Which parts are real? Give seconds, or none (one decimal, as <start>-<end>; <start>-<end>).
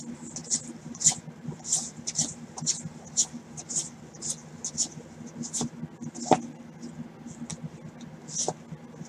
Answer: 0.0-9.1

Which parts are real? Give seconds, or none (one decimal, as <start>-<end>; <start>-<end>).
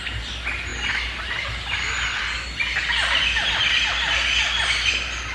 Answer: 0.0-5.3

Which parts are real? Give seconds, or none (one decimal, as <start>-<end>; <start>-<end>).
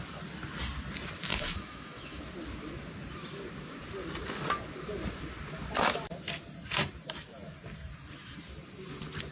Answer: 0.0-1.3; 2.2-9.3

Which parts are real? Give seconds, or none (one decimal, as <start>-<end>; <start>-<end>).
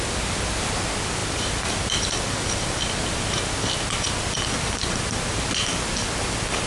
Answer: 0.0-6.7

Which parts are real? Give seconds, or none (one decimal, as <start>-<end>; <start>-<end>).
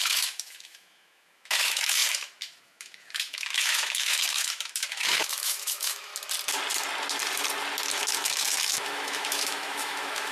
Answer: 6.1-7.9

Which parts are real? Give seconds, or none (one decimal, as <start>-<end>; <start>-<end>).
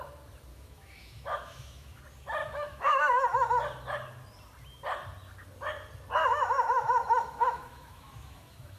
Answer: 0.0-0.5; 2.0-2.4; 3.5-6.2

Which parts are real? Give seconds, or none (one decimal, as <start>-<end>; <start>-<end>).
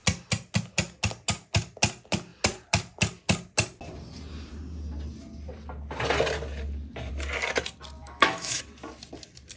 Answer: 0.0-8.0; 8.6-9.6